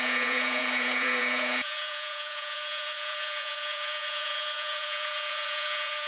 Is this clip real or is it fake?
fake